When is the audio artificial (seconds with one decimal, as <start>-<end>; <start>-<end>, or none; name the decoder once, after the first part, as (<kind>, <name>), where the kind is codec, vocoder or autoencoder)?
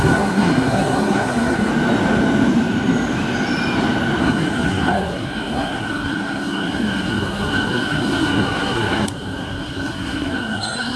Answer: 0.0-1.7 (codec, SNAC); 4.2-11.0